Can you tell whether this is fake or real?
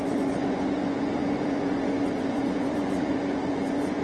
fake